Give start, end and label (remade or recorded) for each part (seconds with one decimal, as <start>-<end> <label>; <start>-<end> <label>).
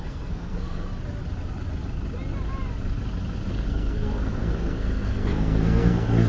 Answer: 0.0-0.9 remade; 0.9-3.5 recorded; 3.5-6.3 remade